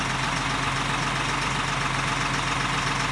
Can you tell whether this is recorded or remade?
recorded